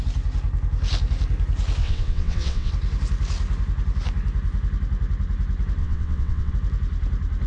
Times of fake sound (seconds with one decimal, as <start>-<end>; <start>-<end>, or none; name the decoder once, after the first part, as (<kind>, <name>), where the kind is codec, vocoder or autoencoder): 1.8-2.7 (vocoder, WaveNeXt); 5.8-6.5